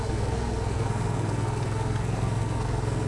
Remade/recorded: remade